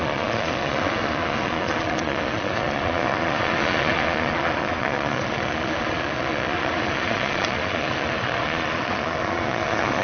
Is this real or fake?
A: fake